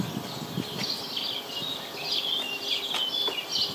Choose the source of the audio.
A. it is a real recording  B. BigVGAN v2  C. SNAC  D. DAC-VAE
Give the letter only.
A